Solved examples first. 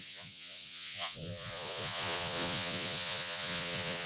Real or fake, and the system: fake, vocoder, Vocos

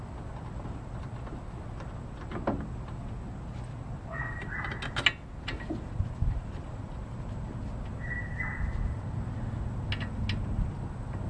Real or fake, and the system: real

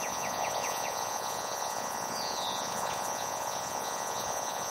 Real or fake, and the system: fake, vocoder, Vocos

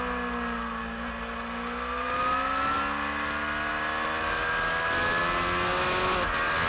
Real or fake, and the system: real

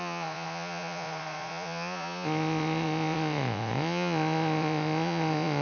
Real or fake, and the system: fake, vocoder, Vocos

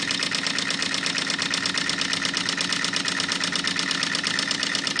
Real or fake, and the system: real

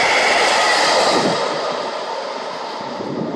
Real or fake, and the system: real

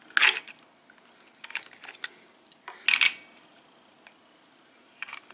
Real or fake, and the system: real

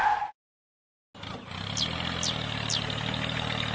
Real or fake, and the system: real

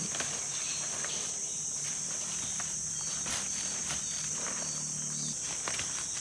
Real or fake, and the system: real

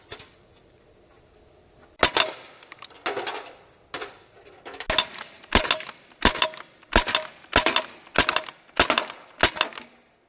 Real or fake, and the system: real